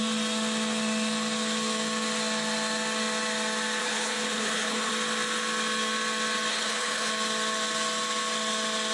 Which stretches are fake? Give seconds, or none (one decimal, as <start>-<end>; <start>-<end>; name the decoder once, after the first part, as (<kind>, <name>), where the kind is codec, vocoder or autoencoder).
3.8-4.9 (codec, HILCodec); 6.5-7.1